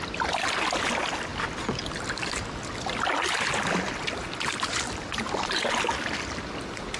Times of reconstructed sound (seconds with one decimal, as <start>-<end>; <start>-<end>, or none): none